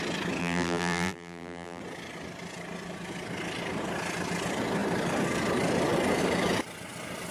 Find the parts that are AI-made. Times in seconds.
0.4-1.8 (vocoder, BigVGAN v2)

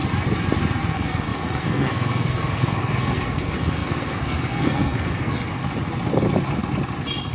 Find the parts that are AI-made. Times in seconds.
0.9-5.6 (codec, SNAC)

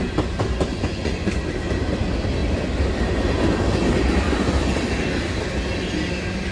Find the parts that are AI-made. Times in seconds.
0.7-1.3 (vocoder, Vocos)

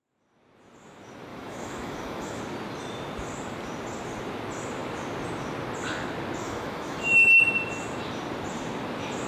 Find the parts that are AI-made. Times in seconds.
1.3-2.4 (autoencoder, DAC-VAE); 6.4-7.3

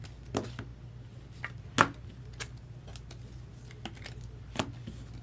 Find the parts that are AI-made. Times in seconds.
none